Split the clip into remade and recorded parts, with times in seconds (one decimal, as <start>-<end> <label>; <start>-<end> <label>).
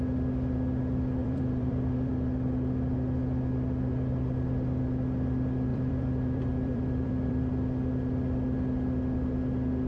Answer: 0.0-1.2 recorded; 1.2-2.1 remade; 2.1-5.7 recorded; 5.7-7.5 remade; 7.5-9.9 recorded